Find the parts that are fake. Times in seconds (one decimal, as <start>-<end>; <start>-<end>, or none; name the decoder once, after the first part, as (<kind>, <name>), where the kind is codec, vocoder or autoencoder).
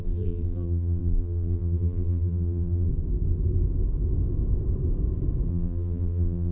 0.0-2.9 (vocoder, BigVGAN v2); 5.5-6.5